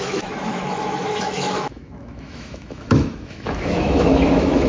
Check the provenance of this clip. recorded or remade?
remade